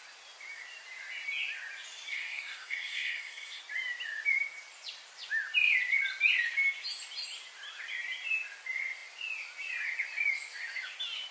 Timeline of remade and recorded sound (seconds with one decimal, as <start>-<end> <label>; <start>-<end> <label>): 0.0-2.1 recorded; 2.1-3.6 remade; 3.6-11.3 recorded